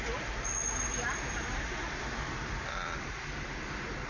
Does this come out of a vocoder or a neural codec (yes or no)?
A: no